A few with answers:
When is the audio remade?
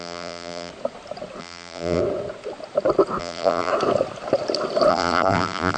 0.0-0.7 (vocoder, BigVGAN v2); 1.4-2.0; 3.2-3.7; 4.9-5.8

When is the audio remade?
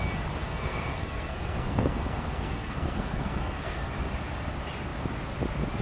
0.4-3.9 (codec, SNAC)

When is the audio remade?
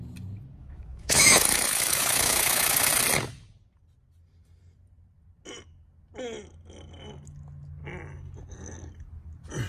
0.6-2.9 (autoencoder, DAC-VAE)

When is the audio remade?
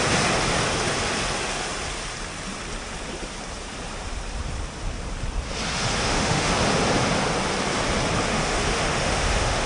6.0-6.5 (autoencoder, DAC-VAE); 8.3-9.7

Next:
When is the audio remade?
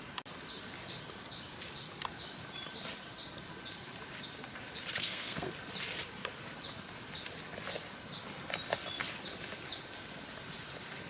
5.0-5.5 (codec, SNAC)